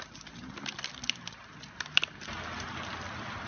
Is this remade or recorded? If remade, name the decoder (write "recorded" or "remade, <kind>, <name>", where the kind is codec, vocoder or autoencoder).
recorded